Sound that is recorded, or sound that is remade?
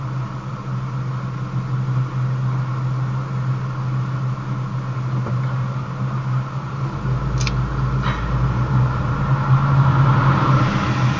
recorded